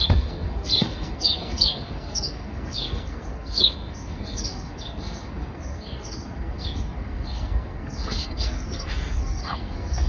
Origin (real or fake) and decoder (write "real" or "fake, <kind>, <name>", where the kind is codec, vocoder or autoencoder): fake, codec, SNAC